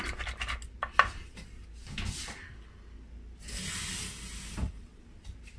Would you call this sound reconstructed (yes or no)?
no